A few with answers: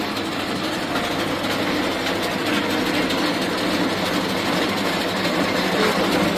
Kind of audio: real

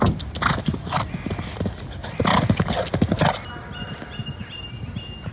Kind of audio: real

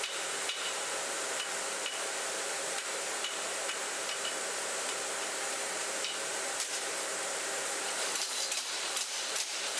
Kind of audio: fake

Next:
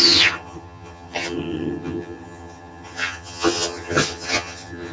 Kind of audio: fake